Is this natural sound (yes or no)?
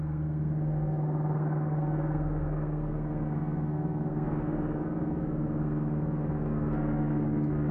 no